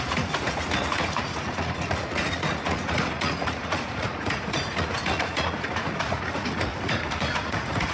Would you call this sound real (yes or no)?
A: no